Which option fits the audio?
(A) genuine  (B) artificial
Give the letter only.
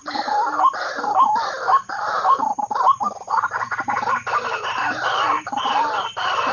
B